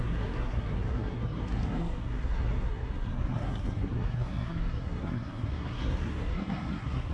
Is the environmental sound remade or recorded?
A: remade